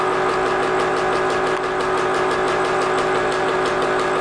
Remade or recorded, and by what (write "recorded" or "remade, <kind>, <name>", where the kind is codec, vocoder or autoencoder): recorded